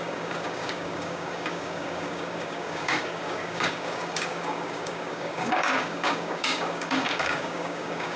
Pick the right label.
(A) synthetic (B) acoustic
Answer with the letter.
A